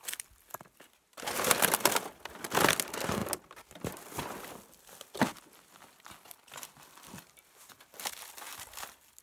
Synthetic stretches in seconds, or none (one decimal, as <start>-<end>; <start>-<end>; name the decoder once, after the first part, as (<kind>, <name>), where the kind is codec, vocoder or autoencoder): none